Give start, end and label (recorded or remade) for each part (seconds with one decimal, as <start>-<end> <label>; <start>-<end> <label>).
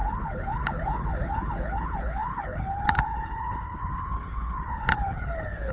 0.0-5.7 remade